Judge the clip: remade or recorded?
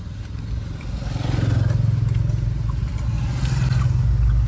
recorded